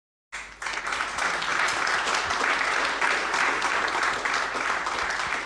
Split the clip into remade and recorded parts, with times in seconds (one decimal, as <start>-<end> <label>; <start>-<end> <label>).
0.0-5.5 recorded